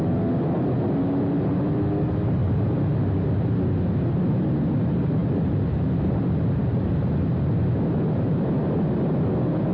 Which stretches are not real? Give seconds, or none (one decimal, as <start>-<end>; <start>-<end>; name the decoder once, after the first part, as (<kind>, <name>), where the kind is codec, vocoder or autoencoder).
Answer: none